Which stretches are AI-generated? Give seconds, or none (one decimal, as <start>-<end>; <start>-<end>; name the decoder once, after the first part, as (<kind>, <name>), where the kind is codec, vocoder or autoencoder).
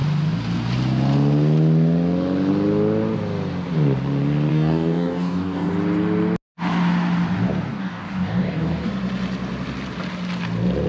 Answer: 4.5-5.7 (codec, DAC); 7.7-8.9